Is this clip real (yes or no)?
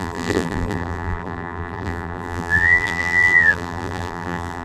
no